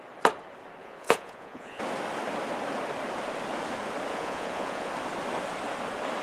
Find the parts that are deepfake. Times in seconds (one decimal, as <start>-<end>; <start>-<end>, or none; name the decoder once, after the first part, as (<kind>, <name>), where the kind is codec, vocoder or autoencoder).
0.8-1.8 (vocoder, Vocos); 4.1-4.9